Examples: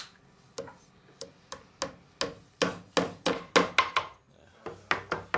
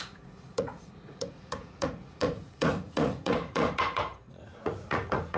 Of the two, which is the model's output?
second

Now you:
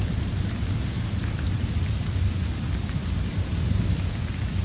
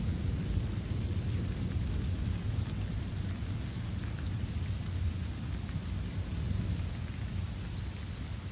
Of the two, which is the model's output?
first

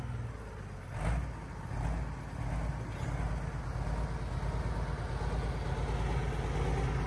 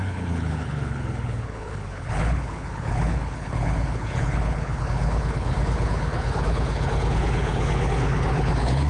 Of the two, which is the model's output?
second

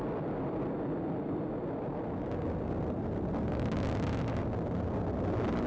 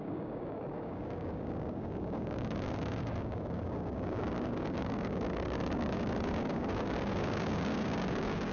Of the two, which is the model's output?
second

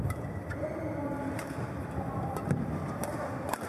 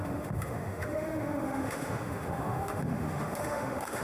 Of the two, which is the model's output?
second